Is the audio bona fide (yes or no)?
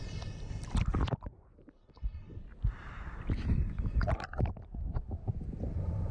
yes